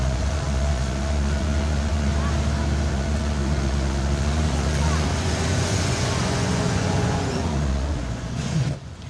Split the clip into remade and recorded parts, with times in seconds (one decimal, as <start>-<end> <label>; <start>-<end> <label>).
0.0-2.1 remade; 2.1-2.9 recorded; 2.9-9.1 remade

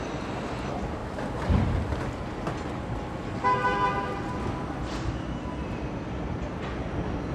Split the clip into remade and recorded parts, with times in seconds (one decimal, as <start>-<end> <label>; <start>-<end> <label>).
0.0-7.3 recorded